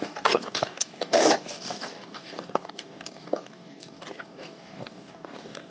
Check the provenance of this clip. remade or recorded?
remade